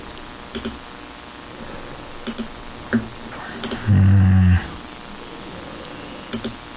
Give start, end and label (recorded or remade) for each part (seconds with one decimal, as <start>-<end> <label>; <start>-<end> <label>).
0.0-6.8 recorded